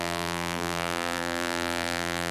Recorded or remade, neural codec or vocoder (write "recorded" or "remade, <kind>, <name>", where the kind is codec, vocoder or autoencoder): remade, vocoder, BigVGAN v2